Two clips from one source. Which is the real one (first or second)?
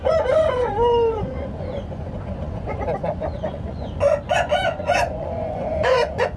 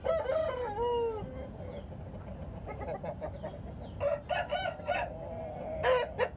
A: second